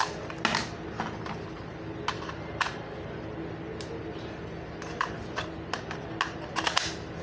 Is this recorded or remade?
recorded